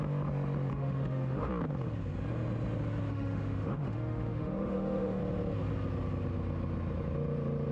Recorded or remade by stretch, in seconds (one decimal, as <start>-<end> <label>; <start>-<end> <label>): 0.0-0.7 recorded; 0.7-1.5 remade; 1.5-3.1 recorded; 3.1-5.2 remade; 5.2-7.7 recorded